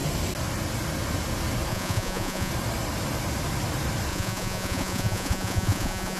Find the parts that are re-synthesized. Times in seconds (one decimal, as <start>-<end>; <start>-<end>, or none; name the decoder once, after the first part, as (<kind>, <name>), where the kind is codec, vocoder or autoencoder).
1.7-2.5 (vocoder, Vocos); 4.1-6.2